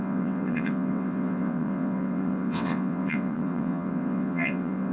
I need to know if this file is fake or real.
fake